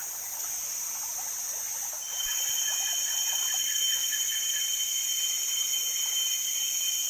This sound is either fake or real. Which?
real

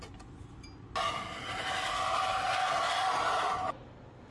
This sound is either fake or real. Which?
real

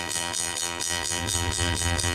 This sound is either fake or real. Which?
fake